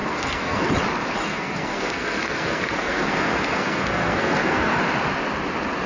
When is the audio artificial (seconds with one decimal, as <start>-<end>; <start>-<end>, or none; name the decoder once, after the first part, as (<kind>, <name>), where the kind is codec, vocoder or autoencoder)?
0.0-0.7 (codec, SNAC); 1.3-4.8